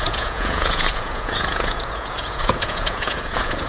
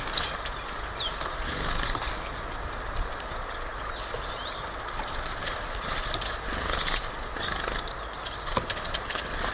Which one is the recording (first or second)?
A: second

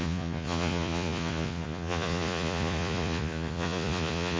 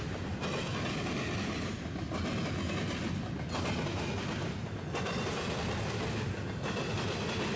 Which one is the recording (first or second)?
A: second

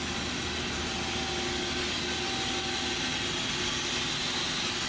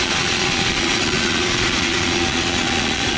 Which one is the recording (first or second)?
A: first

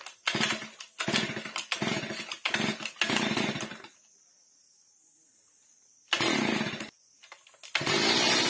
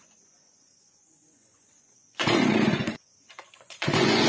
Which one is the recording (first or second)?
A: first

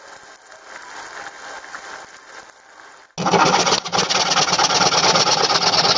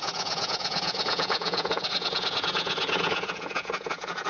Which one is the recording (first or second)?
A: first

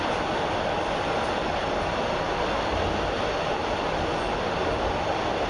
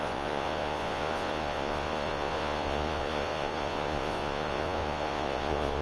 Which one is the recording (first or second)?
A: first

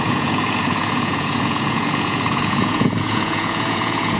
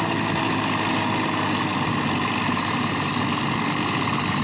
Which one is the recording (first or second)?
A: second